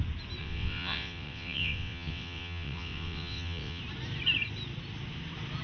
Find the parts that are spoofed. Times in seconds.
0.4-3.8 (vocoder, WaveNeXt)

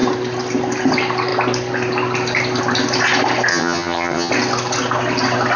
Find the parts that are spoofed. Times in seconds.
3.5-4.3 (vocoder, HiFi-GAN)